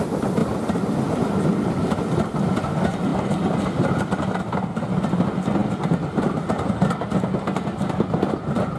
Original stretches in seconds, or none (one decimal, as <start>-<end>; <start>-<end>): 0.0-8.8